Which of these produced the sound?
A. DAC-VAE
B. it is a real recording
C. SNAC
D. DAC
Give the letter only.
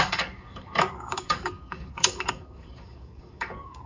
D